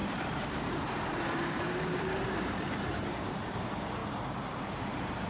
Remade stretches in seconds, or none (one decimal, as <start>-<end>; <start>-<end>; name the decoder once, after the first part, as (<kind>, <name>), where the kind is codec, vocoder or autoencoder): 0.0-4.0 (vocoder, BigVGAN v2); 4.6-5.3